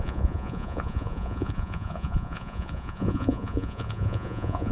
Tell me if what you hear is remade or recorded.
remade